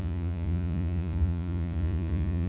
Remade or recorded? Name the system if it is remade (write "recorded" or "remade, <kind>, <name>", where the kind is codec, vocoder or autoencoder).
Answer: remade, vocoder, Vocos